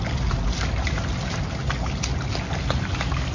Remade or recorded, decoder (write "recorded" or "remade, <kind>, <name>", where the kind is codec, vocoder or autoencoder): recorded